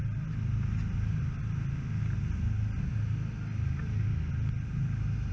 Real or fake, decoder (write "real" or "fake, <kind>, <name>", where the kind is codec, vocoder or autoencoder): real